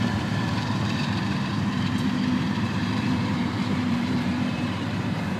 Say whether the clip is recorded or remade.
remade